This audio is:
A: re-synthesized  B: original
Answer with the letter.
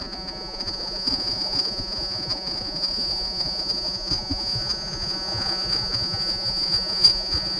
A